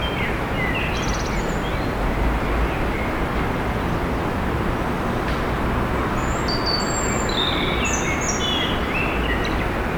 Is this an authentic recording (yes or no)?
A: yes